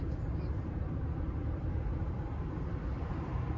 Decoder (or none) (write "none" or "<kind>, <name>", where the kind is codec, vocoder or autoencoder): vocoder, BigVGAN v2